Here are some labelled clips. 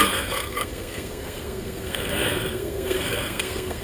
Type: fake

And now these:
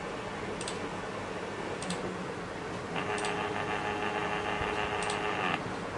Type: real